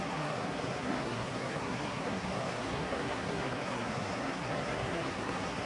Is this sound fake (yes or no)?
yes